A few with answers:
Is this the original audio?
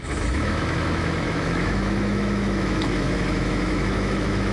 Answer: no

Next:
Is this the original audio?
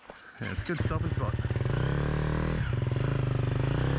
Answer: yes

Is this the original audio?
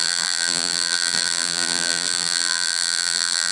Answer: no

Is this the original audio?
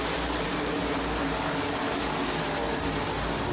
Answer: yes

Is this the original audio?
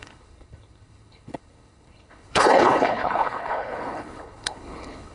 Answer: no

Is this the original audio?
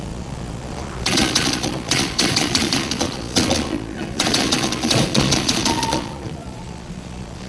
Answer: no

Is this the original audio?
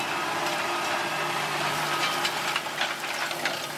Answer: yes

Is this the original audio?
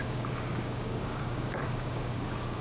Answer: no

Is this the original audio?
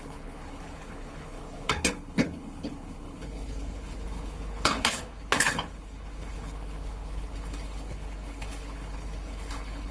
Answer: no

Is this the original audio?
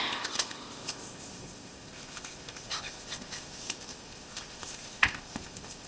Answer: no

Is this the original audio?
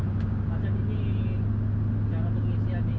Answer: yes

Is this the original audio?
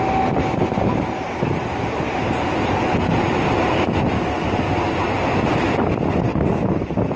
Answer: yes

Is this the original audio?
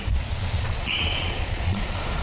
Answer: no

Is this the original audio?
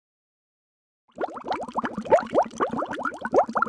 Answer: yes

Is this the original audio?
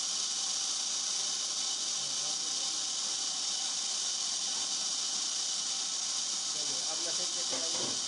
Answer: yes